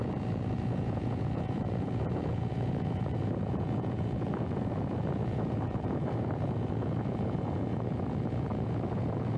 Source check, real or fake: fake